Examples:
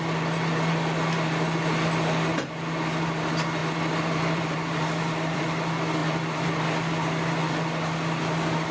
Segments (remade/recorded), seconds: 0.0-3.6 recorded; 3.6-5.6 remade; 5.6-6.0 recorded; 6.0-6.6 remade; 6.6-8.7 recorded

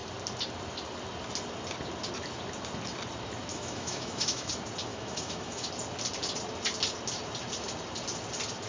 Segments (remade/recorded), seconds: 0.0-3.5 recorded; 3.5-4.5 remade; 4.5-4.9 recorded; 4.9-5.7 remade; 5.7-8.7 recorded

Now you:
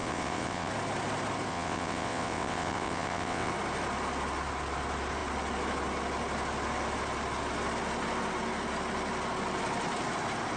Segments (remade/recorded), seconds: 0.0-0.7 remade; 0.7-1.5 recorded; 1.5-3.5 remade; 3.5-10.6 recorded